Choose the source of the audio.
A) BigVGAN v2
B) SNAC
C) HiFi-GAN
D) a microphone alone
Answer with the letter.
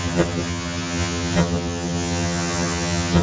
C